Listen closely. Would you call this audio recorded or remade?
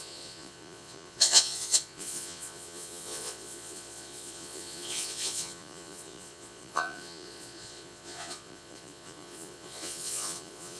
remade